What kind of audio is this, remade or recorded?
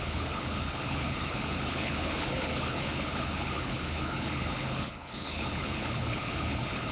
remade